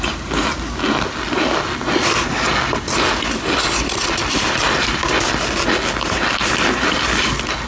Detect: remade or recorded recorded